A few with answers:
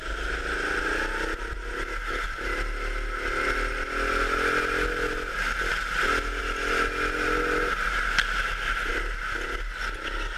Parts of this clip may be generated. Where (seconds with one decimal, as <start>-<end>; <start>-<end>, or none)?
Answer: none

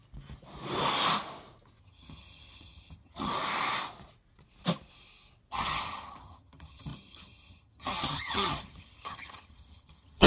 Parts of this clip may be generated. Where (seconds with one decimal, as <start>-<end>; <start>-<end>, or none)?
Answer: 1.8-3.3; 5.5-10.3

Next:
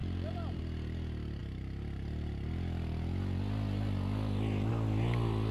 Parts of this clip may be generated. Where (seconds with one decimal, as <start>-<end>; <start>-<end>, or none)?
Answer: 0.0-0.6

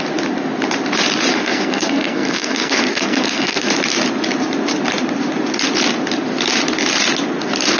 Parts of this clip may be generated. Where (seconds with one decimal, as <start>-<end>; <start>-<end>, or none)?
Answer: 1.3-3.7